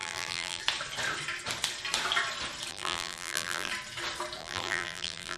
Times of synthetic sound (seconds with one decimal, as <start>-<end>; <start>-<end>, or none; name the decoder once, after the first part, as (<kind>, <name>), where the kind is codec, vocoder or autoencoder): 0.0-0.6 (vocoder, BigVGAN v2); 2.7-3.7; 4.4-5.4